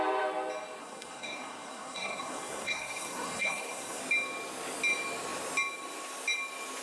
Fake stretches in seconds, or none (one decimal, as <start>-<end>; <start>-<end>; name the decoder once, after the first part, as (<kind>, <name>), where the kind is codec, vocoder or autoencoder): 0.8-4.0 (codec, SNAC)